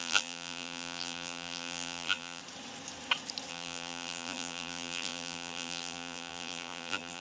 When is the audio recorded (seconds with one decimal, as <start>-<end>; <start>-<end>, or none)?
2.4-3.5